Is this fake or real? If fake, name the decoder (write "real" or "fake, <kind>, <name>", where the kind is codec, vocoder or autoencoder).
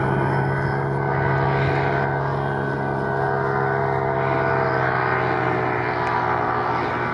real